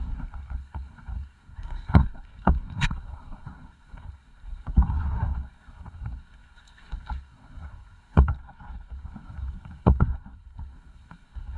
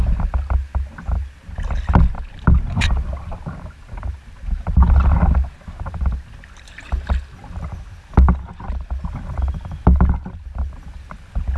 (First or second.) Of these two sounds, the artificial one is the first